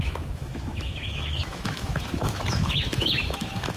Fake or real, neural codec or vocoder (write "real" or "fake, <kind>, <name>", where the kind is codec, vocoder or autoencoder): fake, autoencoder, DAC-VAE